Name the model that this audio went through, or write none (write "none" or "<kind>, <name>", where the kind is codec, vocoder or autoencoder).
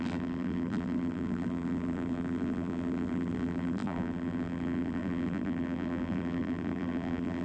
vocoder, BigVGAN v2